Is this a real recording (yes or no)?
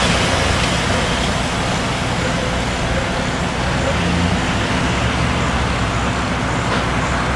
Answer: yes